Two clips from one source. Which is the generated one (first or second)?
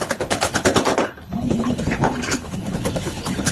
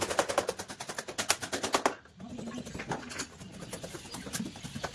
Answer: first